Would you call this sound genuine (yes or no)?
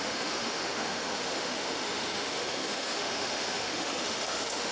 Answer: no